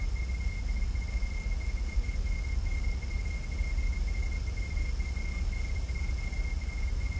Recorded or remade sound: recorded